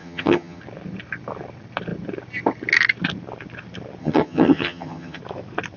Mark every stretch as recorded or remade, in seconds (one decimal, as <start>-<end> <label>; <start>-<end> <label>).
0.0-0.6 remade; 0.6-4.0 recorded; 4.0-5.2 remade; 5.2-5.8 recorded